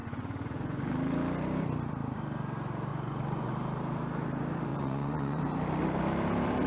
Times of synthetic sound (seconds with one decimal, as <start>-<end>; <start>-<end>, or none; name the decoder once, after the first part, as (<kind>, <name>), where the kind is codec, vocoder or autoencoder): 0.0-0.8 (vocoder, Vocos); 2.9-3.5; 4.7-5.4